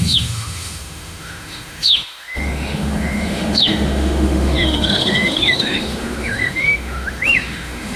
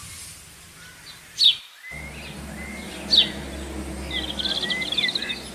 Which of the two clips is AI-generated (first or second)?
first